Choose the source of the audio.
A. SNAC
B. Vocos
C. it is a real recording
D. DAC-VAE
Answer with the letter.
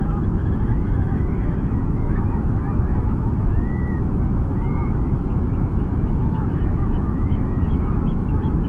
D